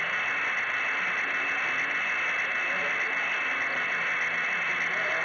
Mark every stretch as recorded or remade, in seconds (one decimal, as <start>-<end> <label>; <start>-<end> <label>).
0.0-5.2 recorded